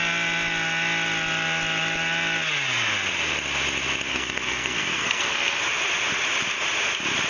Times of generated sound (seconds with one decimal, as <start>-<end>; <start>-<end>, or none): 4.1-5.6